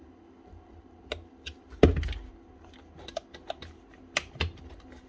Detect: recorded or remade recorded